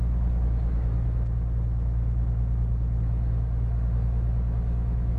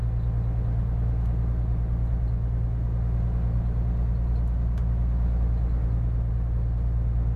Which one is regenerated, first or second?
first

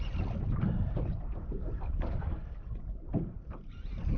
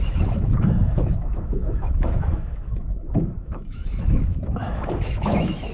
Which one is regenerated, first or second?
second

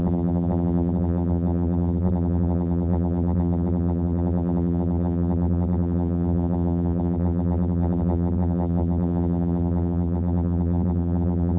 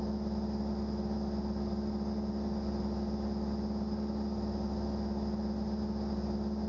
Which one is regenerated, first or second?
first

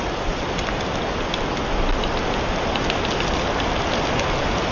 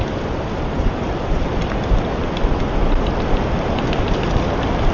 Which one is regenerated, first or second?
second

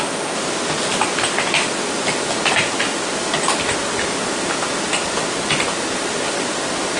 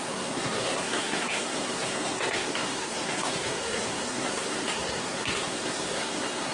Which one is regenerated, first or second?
second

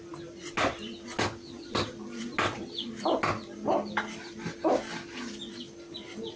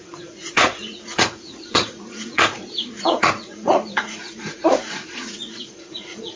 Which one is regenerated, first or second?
second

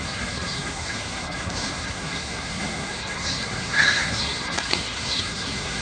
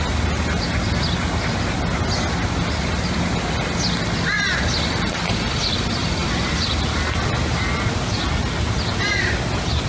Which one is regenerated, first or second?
first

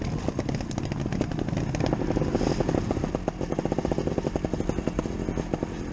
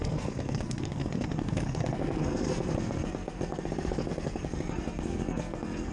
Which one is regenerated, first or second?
second